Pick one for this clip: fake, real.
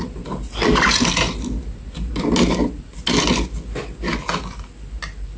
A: real